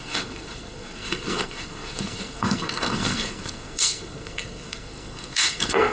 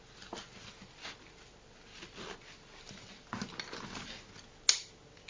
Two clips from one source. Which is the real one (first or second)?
second